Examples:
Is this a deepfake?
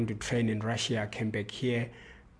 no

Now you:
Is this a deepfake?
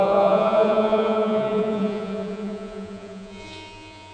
yes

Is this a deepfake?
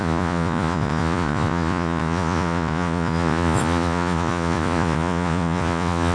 yes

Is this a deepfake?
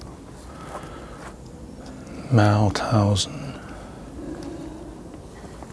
no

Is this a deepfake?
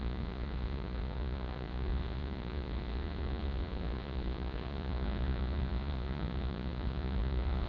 yes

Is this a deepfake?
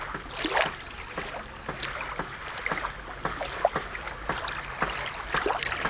no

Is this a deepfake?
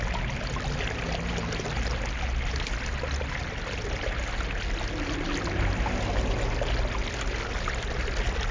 no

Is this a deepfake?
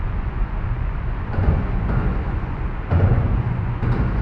yes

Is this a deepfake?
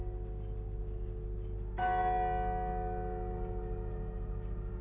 no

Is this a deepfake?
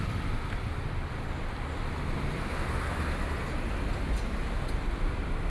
no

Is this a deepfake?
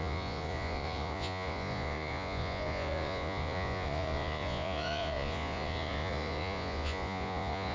yes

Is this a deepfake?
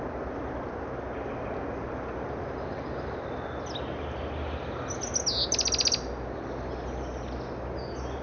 no